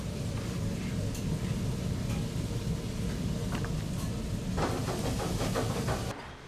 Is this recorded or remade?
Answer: recorded